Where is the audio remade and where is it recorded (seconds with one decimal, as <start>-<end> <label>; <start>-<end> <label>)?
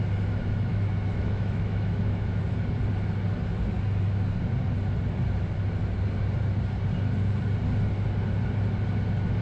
0.0-0.7 recorded; 0.7-2.4 remade; 2.4-9.4 recorded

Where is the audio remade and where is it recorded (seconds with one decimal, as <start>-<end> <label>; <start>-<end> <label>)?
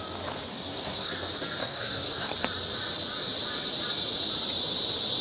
0.0-0.5 recorded; 0.5-1.1 remade; 1.1-1.6 recorded; 1.6-2.3 remade; 2.3-5.2 recorded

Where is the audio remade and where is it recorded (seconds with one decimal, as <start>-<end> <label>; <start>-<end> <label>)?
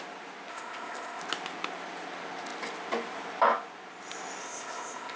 0.0-0.5 recorded; 0.5-1.2 remade; 1.2-4.4 recorded; 4.4-5.2 remade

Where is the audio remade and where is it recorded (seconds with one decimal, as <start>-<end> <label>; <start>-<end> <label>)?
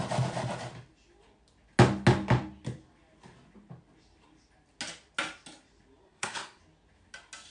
0.0-6.0 recorded; 6.0-6.6 remade; 6.6-7.5 recorded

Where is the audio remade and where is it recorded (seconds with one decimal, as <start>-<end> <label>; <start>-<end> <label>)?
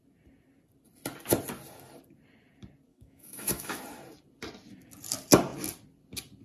0.0-2.9 recorded; 2.9-3.8 remade; 3.8-6.4 recorded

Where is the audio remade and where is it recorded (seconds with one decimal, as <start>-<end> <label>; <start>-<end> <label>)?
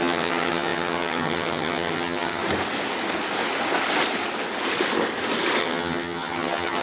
0.0-2.4 remade; 2.4-5.6 recorded; 5.6-6.8 remade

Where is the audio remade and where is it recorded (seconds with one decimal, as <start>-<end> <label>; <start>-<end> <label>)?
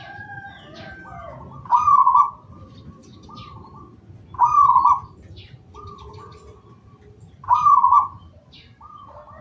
0.0-9.4 recorded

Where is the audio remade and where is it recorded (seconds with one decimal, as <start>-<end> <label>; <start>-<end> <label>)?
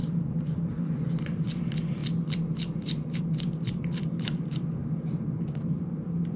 0.0-2.0 remade; 2.0-3.2 recorded; 3.2-6.4 remade